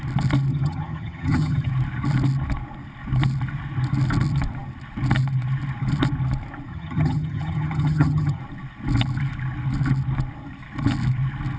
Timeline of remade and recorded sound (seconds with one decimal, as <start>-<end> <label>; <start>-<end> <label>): 0.0-0.5 recorded; 0.5-1.7 remade; 1.7-6.7 recorded; 6.7-8.4 remade; 8.4-11.6 recorded